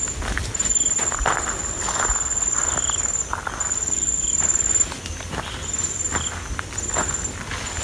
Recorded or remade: recorded